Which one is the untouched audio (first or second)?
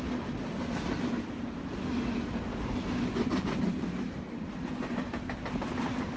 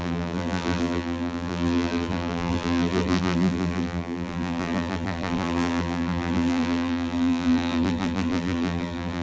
first